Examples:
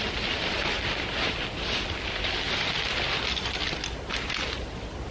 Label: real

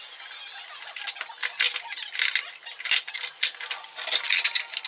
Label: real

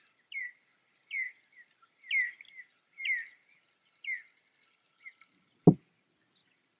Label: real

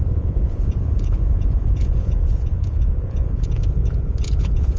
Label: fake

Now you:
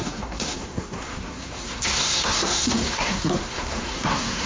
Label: fake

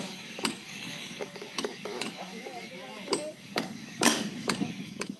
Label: fake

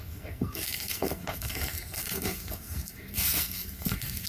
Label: fake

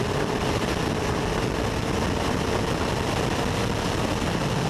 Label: real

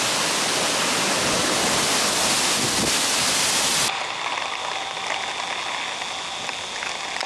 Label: real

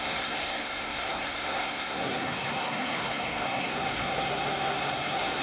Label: fake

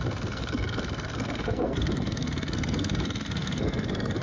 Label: fake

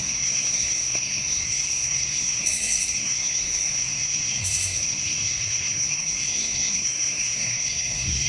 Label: fake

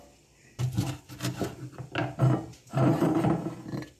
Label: real